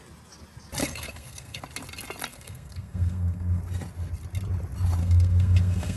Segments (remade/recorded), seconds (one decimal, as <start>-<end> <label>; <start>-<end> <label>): 0.0-0.8 recorded; 0.8-1.6 remade; 1.6-2.3 recorded; 2.3-3.6 remade; 3.6-5.0 recorded; 5.0-6.0 remade